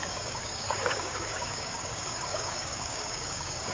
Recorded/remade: remade